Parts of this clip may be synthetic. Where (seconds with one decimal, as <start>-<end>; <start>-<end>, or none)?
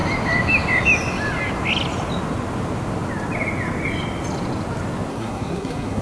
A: 5.1-6.0